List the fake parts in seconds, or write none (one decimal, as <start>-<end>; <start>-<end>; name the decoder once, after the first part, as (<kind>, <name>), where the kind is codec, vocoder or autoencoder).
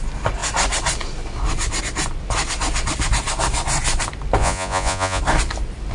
4.4-5.2 (vocoder, Vocos)